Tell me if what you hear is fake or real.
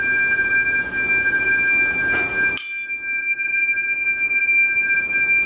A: real